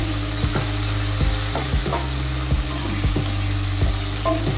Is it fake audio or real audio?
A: real